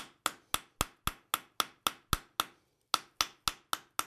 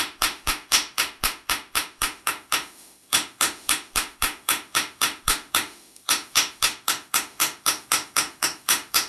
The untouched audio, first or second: first